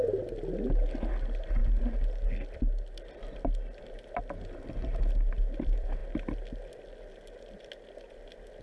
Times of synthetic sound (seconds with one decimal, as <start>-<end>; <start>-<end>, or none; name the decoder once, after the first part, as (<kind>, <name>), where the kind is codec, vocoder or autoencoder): none